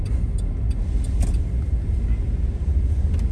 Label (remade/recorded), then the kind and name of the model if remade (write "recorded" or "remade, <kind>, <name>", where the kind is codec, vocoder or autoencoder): recorded